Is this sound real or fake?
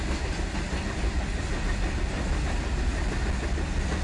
real